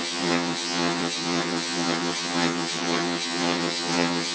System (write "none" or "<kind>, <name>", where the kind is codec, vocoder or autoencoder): vocoder, HiFi-GAN